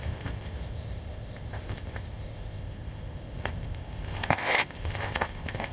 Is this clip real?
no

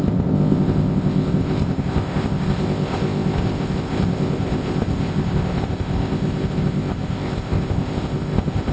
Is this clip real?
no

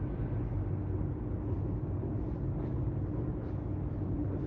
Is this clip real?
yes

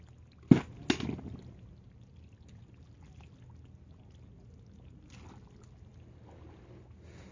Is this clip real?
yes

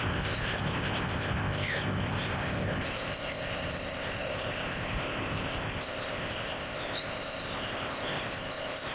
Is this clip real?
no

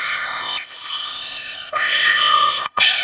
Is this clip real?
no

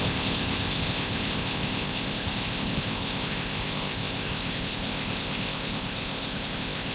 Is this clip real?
no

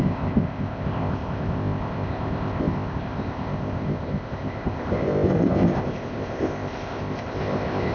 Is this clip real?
no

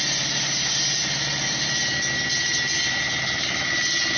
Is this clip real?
yes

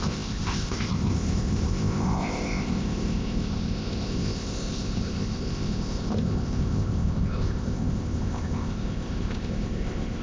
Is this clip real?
no